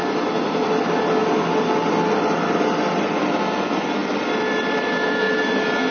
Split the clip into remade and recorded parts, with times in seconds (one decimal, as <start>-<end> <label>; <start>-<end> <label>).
0.0-5.9 recorded